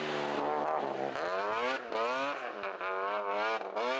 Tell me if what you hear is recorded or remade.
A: recorded